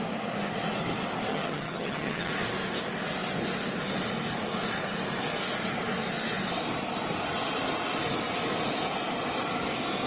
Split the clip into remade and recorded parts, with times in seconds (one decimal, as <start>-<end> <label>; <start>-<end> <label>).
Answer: 0.0-1.3 recorded; 1.3-2.3 remade; 2.3-10.1 recorded